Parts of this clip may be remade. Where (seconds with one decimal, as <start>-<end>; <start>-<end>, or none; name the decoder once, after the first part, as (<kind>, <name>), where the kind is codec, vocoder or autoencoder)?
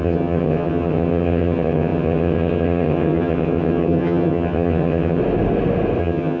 0.0-5.2 (vocoder, HiFi-GAN); 6.0-6.4